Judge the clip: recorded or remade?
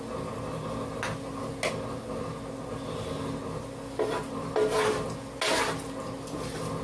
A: recorded